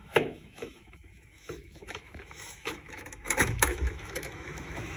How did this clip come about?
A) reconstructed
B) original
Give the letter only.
A